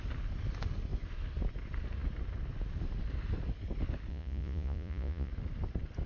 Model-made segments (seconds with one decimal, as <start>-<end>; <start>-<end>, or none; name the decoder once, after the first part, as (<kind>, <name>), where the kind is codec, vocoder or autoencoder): 4.1-5.3 (vocoder, Vocos)